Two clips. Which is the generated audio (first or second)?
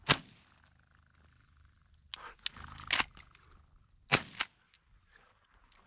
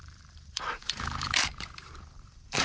second